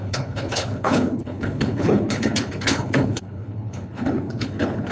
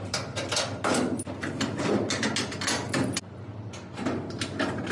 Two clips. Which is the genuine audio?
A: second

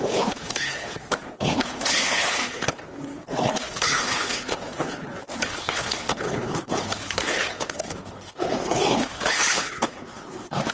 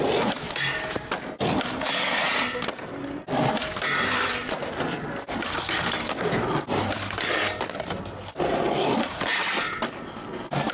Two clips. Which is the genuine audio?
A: second